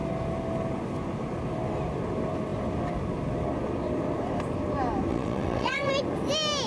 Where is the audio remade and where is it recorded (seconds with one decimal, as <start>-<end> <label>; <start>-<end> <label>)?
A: 0.0-5.1 recorded; 5.1-5.9 remade; 5.9-6.7 recorded